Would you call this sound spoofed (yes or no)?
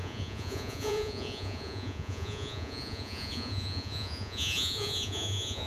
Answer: yes